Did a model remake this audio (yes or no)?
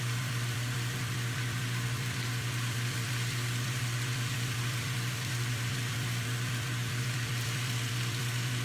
yes